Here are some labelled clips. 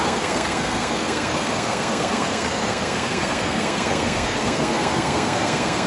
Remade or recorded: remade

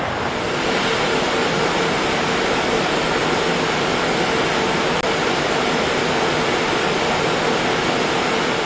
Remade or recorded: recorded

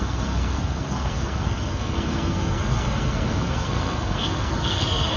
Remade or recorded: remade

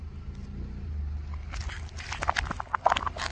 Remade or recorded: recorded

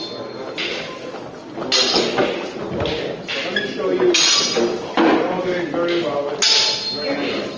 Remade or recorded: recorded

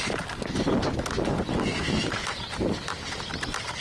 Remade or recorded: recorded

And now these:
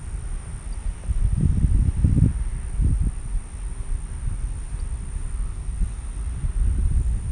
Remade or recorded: recorded